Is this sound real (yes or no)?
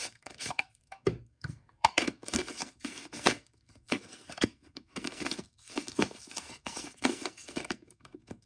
no